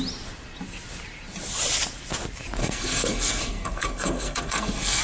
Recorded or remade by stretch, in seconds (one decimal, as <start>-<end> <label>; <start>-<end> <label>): 0.0-2.6 recorded; 2.6-5.0 remade